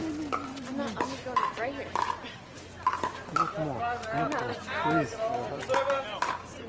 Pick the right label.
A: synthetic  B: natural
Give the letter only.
B